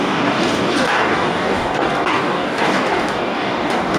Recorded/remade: remade